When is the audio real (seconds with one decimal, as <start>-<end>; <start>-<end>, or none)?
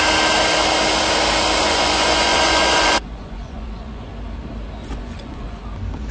0.0-1.6; 4.1-4.8; 5.6-6.1